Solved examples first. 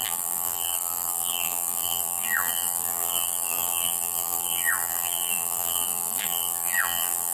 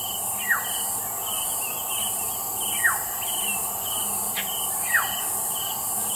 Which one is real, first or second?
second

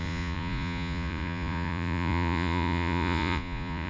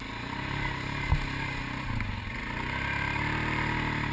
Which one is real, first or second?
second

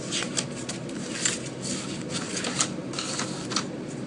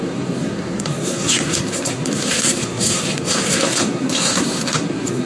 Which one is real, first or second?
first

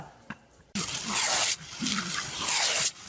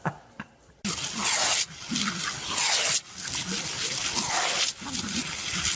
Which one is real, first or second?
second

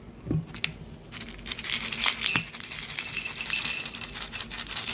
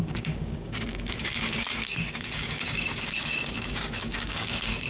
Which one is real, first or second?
first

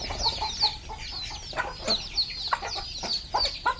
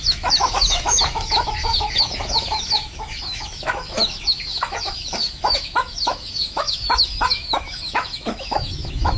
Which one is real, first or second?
first